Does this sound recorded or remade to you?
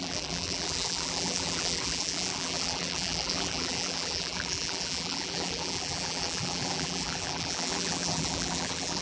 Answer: remade